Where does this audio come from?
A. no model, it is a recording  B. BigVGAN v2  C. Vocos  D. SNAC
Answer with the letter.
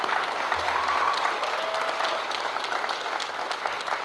A